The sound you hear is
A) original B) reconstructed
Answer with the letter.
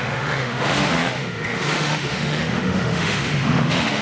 B